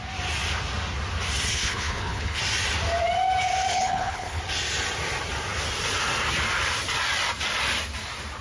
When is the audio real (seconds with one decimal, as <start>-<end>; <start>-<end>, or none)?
0.0-1.5; 2.4-3.7; 4.4-8.4